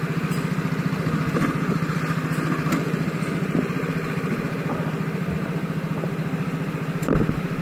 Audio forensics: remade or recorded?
recorded